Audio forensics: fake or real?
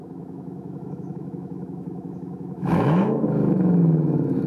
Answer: fake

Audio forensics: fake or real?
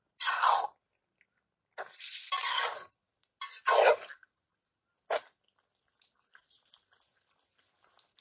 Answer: real